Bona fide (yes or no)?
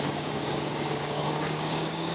no